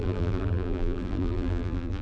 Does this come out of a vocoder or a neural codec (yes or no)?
yes